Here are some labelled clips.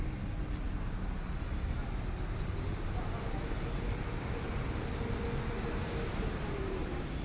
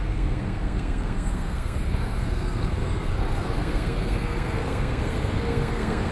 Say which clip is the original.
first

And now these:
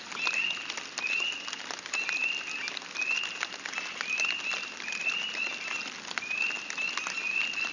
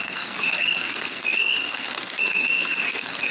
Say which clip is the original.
first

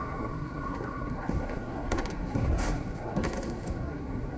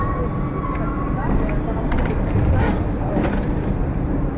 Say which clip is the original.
second